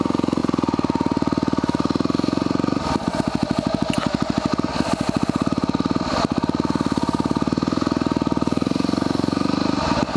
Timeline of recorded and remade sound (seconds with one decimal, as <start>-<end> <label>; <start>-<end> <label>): 0.0-10.2 recorded